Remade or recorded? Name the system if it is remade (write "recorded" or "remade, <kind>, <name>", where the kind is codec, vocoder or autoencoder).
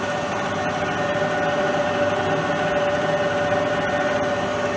recorded